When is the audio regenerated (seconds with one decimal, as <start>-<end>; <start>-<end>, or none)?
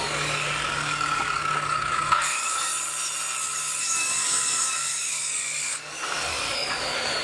0.0-2.7; 3.4-7.2